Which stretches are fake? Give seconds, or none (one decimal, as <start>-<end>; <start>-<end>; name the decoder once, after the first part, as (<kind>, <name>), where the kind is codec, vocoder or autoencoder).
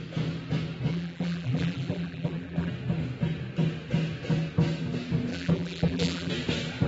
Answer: 0.9-2.7 (vocoder, BigVGAN v2); 5.3-6.3